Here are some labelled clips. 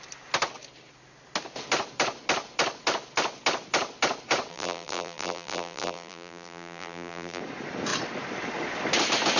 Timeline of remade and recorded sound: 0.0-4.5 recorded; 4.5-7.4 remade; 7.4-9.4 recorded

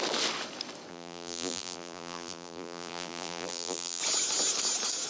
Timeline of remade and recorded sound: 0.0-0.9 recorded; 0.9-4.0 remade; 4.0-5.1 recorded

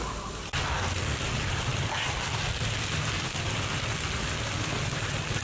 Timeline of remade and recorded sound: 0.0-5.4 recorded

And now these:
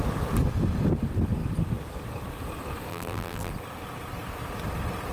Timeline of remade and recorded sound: 0.0-2.9 recorded; 2.9-3.5 remade; 3.5-5.1 recorded